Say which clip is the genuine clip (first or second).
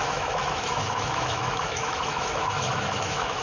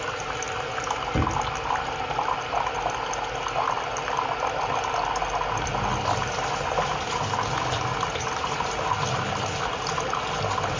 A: second